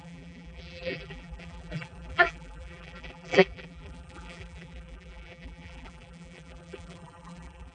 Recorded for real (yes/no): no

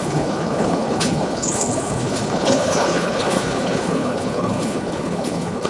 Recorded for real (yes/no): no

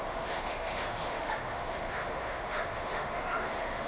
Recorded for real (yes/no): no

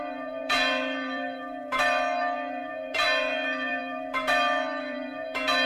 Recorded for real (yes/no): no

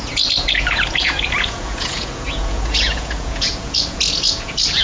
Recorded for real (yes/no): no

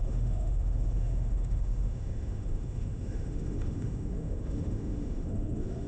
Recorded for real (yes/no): no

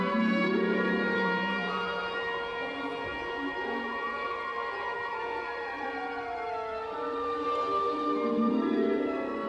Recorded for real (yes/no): no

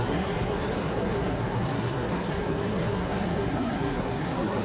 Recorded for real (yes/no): no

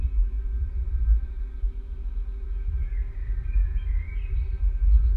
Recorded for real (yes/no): yes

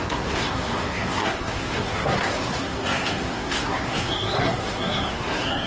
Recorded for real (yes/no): no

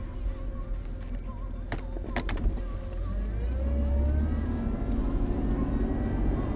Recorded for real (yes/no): yes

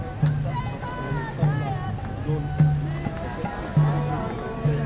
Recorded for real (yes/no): yes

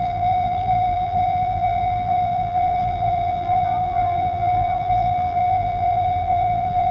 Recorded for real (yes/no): no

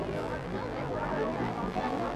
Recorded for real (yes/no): no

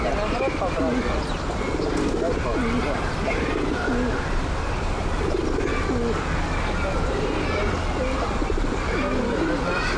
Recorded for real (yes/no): yes